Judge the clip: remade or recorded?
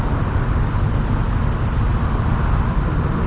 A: recorded